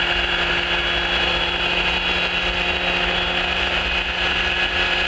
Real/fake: real